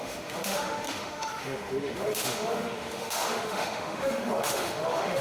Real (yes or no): no